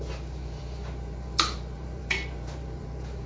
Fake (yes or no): yes